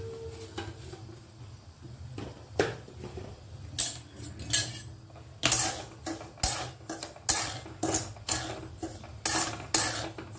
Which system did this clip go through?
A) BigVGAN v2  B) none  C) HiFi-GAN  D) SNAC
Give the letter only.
B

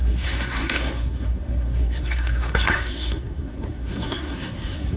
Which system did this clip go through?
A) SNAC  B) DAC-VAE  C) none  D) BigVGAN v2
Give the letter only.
A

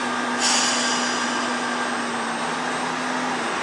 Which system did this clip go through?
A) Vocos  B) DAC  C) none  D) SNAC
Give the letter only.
C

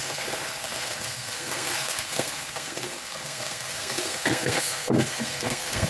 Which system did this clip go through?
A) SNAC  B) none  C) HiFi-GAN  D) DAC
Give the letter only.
A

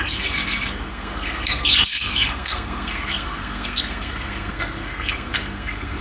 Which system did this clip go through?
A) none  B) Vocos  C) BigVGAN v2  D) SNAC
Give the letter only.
D